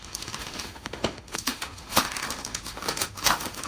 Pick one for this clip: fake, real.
fake